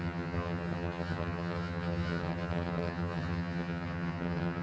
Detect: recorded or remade remade